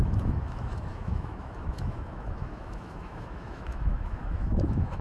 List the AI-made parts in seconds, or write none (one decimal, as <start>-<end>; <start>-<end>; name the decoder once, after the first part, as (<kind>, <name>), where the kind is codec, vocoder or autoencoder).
0.0-5.0 (autoencoder, DAC-VAE)